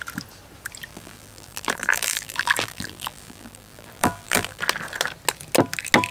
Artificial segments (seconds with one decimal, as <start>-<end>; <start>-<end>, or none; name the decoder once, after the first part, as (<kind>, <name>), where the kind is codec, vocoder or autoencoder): 0.9-4.6 (vocoder, BigVGAN v2)